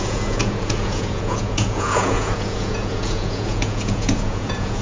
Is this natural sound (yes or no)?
no